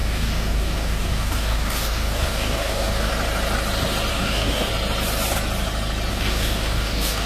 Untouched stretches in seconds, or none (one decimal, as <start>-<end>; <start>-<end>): 3.1-4.1; 4.7-6.1

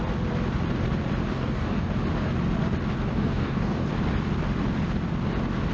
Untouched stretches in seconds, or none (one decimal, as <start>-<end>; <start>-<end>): 0.0-1.3; 1.9-3.1; 3.9-5.7

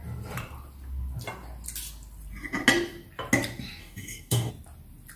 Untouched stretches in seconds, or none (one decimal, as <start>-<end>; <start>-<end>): 0.0-3.8; 4.5-5.2